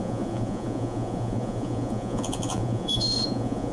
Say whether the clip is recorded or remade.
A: remade